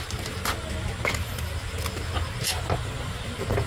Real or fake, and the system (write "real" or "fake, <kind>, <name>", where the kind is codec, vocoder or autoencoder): real